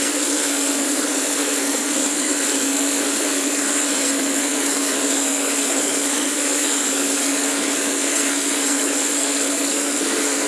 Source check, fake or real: fake